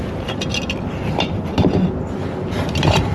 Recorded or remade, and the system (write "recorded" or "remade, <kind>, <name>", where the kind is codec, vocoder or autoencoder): recorded